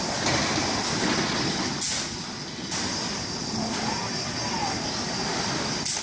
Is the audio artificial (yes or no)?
no